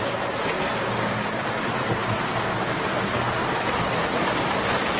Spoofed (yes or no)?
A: no